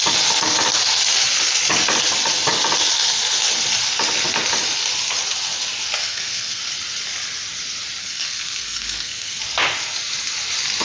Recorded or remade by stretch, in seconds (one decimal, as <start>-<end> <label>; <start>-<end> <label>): 0.0-6.0 recorded; 6.0-6.6 remade; 6.6-8.0 recorded; 8.0-9.4 remade; 9.4-10.8 recorded